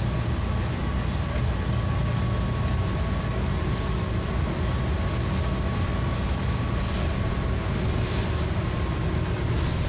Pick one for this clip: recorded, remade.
recorded